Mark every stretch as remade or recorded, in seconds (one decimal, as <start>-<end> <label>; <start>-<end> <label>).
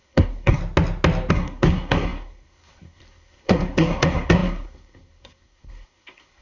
0.0-0.6 remade; 0.6-1.3 recorded; 1.3-6.4 remade